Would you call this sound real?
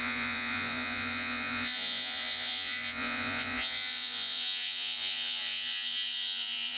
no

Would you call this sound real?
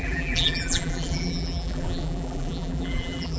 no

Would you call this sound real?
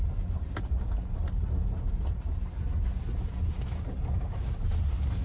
yes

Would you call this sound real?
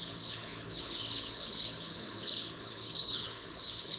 no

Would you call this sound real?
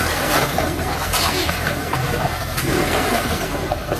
no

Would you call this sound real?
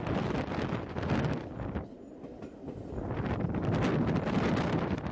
yes